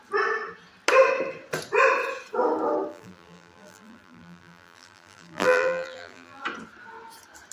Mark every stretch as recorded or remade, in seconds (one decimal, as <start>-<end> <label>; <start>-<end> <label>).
0.0-2.9 recorded; 2.9-6.4 remade; 6.4-7.5 recorded